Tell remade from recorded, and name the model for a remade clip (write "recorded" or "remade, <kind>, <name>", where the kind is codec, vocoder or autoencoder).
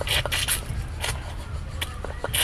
recorded